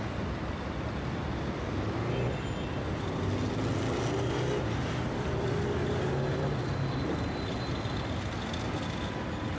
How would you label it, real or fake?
real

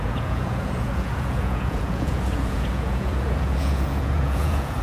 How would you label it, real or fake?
fake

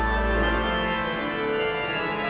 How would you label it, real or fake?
real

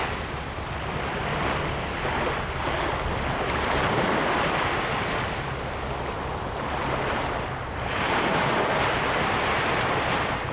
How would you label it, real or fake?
real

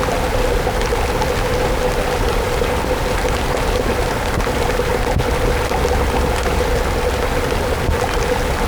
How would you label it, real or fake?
real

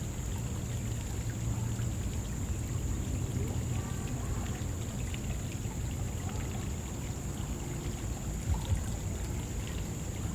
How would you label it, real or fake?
real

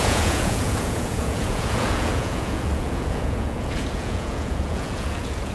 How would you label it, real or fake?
fake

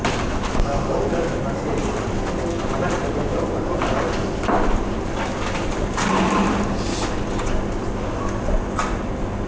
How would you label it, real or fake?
real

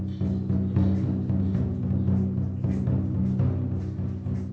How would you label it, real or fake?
real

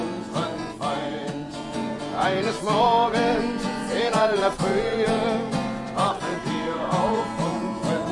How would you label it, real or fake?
fake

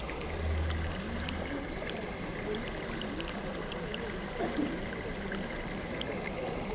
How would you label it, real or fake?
real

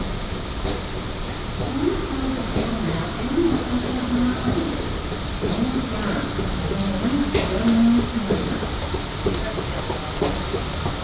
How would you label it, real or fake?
real